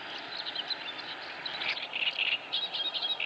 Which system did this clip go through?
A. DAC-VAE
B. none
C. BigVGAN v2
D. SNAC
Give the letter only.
B